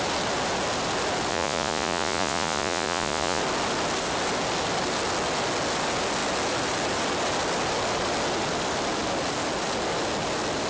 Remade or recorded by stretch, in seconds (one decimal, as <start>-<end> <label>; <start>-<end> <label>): 0.0-1.3 recorded; 1.3-3.4 remade; 3.4-10.7 recorded